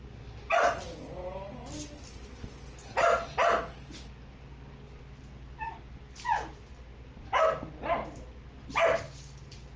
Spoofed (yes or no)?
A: no